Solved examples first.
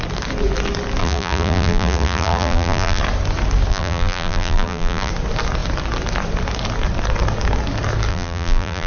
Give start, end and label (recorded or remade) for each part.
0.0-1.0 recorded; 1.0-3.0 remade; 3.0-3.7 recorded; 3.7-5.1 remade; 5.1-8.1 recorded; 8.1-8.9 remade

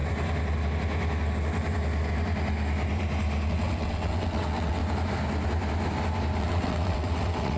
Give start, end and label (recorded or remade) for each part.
0.0-3.5 recorded; 3.5-4.8 remade; 4.8-6.4 recorded; 6.4-7.6 remade

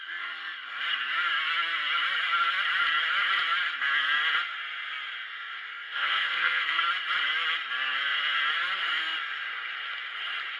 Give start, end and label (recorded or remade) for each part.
0.0-5.7 recorded; 5.7-6.8 remade; 6.8-10.6 recorded

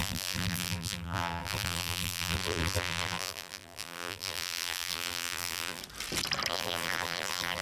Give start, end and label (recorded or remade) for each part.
0.0-5.8 remade; 5.8-6.5 recorded; 6.5-7.6 remade

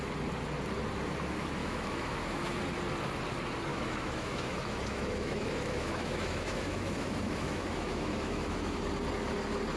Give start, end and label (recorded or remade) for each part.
0.0-1.6 recorded; 1.6-2.6 remade; 2.6-3.7 recorded; 3.7-8.8 remade; 8.8-9.8 recorded